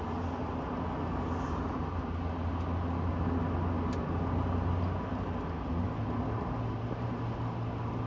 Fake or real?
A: real